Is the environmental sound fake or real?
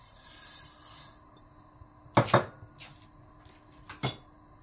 real